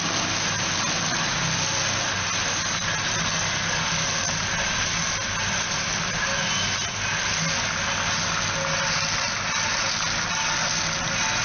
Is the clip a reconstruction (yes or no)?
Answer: no